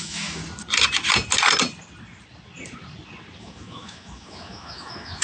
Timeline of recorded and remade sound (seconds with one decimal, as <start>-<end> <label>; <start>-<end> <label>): 0.0-0.4 remade; 0.4-3.4 recorded; 3.4-5.2 remade